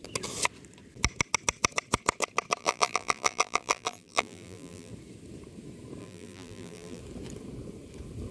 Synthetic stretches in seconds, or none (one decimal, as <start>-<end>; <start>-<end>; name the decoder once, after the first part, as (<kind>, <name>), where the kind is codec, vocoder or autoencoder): 2.6-4.9 (vocoder, BigVGAN v2); 6.0-7.0